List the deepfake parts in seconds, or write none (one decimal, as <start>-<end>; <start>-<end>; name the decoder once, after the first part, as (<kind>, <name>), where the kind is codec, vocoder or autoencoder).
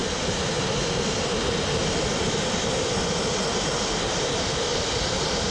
none